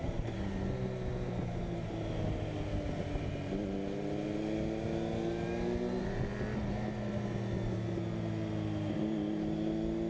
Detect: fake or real real